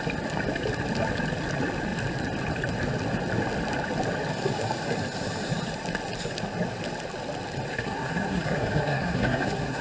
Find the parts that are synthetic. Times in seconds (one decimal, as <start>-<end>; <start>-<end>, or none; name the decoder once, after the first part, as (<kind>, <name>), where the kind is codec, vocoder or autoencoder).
7.7-9.8 (codec, SNAC)